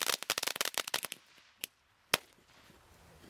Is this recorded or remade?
recorded